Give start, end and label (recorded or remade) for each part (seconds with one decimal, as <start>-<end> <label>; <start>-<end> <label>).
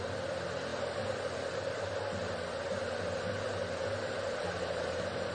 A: 0.0-5.3 recorded